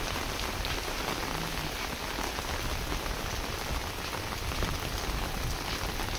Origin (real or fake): real